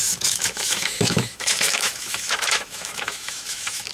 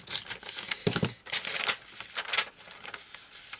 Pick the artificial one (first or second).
first